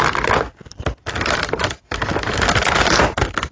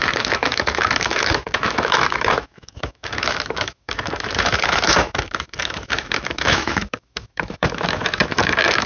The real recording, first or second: first